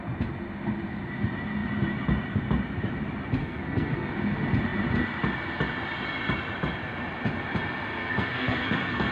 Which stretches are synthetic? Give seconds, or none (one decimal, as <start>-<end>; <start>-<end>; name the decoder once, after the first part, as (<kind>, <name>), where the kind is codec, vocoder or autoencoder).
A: 3.4-4.1 (codec, SNAC); 7.9-9.1